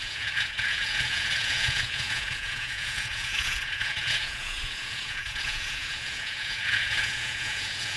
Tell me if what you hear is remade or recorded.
remade